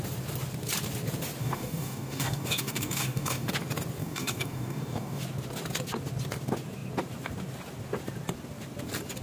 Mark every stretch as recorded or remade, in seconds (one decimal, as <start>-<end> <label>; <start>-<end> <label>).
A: 0.0-1.4 recorded; 1.4-3.5 remade; 3.5-4.0 recorded; 4.0-5.2 remade; 5.2-9.2 recorded